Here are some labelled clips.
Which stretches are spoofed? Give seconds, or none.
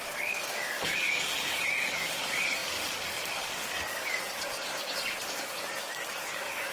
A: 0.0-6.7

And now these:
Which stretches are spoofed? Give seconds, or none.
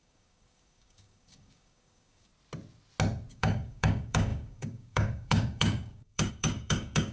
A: 0.0-2.3; 3.3-7.1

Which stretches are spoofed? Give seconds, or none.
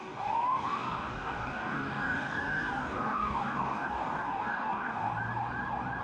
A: 0.0-5.1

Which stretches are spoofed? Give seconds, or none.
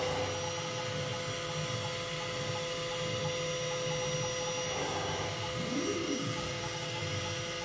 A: 6.0-7.0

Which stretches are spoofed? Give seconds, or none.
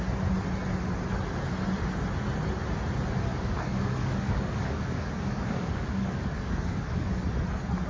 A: 3.3-7.2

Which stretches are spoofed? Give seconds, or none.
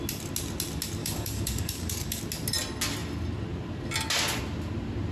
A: 1.0-2.2